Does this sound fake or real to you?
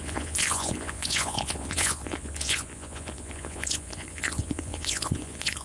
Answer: fake